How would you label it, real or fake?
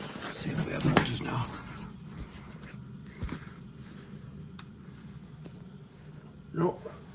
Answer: real